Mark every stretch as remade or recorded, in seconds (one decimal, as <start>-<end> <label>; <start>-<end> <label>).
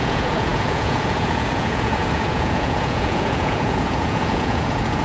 0.0-5.0 remade